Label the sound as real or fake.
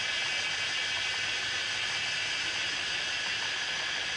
real